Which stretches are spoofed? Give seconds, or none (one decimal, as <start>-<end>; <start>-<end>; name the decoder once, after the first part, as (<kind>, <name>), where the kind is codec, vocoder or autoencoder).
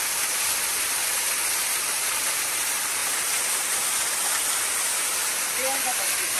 none